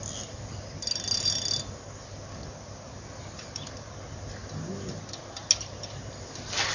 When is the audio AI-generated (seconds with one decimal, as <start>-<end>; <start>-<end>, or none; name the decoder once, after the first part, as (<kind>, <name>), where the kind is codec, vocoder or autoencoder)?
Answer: none